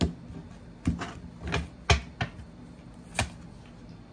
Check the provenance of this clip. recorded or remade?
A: recorded